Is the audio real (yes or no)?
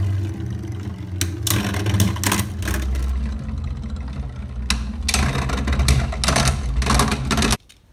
yes